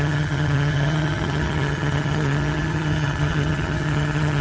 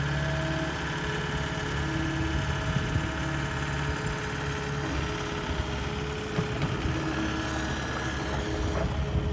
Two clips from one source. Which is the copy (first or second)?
first